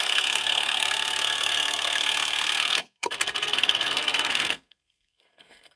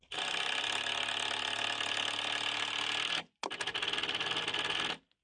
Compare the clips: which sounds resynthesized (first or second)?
first